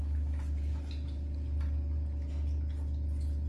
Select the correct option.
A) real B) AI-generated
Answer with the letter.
A